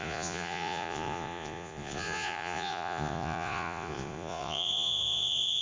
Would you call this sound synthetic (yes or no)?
yes